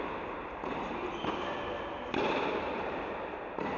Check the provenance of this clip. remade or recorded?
recorded